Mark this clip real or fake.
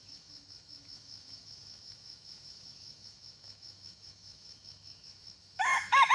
fake